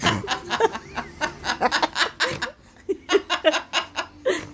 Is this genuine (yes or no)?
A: yes